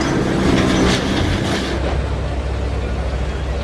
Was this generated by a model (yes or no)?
no